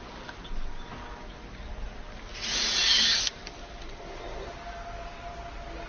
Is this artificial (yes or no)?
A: no